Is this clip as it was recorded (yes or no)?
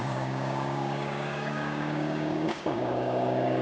no